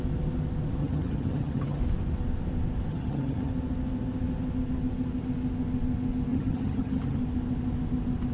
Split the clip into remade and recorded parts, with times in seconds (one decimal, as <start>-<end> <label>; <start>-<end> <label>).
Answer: 0.0-0.8 recorded; 0.8-1.8 remade; 1.8-2.9 recorded; 2.9-3.5 remade; 3.5-6.3 recorded; 6.3-7.2 remade; 7.2-8.3 recorded